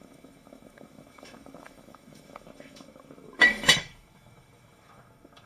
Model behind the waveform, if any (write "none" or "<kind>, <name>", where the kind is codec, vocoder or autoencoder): autoencoder, DAC-VAE